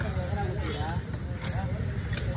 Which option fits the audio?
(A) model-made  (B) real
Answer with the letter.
B